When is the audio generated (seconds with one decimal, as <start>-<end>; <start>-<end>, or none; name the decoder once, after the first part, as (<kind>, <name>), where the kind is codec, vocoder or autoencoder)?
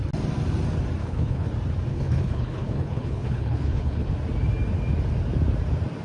1.0-1.5 (codec, HILCodec); 1.9-4.1